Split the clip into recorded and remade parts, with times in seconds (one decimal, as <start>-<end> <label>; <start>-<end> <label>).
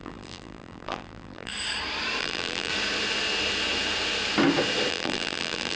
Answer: 0.0-1.5 remade; 1.5-2.2 recorded; 2.2-2.7 remade; 2.7-4.9 recorded; 4.9-5.8 remade